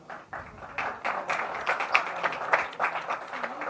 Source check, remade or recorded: recorded